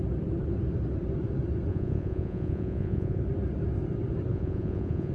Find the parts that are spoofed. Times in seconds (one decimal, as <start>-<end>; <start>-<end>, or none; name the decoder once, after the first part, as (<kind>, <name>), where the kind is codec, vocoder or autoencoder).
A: 1.7-3.2 (vocoder, Vocos); 4.3-5.1